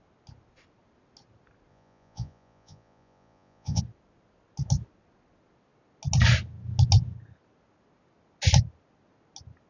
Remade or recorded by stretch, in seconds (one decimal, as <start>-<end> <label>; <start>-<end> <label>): 0.0-1.7 recorded; 1.7-3.8 remade; 3.8-9.7 recorded